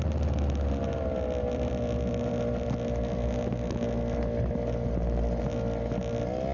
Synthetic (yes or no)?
no